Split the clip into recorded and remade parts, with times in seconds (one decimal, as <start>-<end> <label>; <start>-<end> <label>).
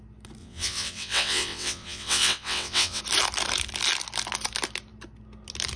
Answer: 0.0-0.4 recorded; 0.4-3.0 remade; 3.0-5.8 recorded